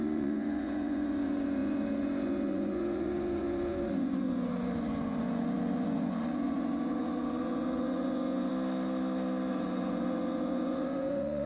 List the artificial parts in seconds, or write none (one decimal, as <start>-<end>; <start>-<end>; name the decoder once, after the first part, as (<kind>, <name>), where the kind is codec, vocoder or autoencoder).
0.0-8.5 (vocoder, Vocos); 9.5-11.5